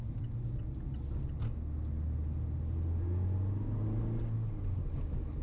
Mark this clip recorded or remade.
recorded